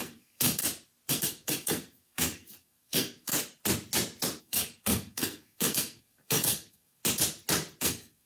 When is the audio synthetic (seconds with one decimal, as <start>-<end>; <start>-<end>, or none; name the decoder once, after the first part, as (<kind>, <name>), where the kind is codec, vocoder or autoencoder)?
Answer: 0.0-0.6 (codec, SNAC); 1.1-3.3; 4.4-7.0; 7.8-8.3